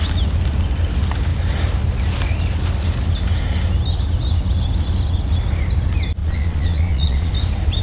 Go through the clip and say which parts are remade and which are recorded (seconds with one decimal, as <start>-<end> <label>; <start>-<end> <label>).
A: 0.0-6.2 recorded; 6.2-7.3 remade; 7.3-7.8 recorded